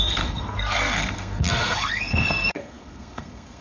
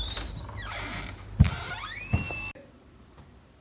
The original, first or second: second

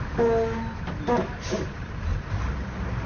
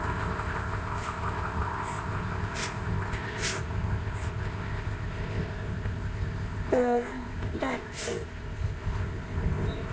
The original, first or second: first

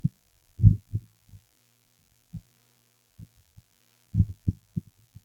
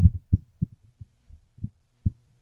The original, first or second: second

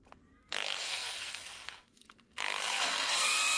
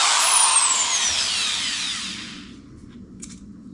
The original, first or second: second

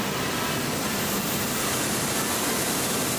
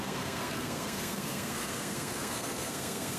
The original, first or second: first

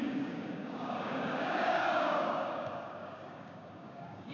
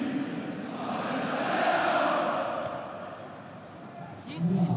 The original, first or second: second